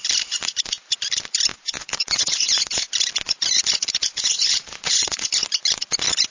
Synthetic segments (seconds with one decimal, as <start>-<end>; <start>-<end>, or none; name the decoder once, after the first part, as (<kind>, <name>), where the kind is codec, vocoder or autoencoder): 1.5-2.9 (vocoder, Vocos); 4.1-5.3